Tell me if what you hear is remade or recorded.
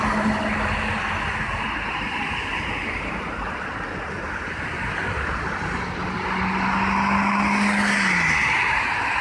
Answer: recorded